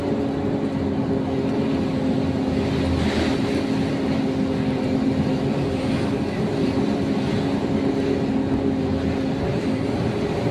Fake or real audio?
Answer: real